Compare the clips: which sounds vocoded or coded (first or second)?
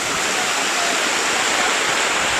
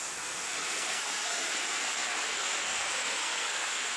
second